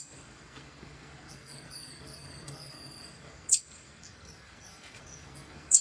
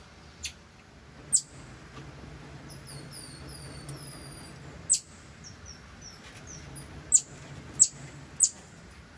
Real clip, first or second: second